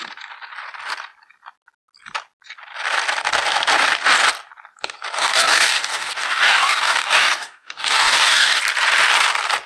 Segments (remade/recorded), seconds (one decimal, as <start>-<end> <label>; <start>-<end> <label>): 0.0-5.2 recorded; 5.2-8.6 remade; 8.6-9.7 recorded